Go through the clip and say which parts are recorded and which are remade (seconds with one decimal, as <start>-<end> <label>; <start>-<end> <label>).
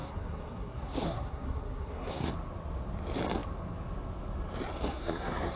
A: 0.0-2.3 remade; 2.3-4.9 recorded; 4.9-5.6 remade